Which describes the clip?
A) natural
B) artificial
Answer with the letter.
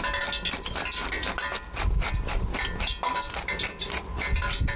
A